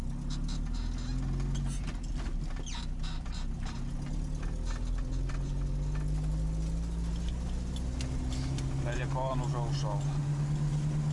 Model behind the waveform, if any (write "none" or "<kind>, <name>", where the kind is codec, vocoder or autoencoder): none